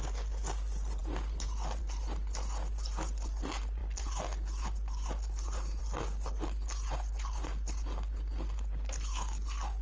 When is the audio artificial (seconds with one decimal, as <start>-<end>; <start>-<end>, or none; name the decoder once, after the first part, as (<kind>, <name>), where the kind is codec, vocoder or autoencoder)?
none